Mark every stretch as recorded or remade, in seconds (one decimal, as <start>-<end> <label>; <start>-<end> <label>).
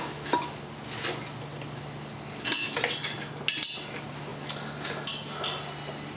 0.0-6.2 recorded